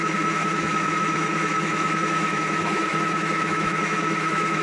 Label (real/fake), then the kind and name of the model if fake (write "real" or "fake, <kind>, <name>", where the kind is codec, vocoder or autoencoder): fake, autoencoder, DAC-VAE